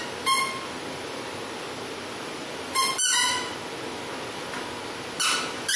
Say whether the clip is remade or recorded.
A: recorded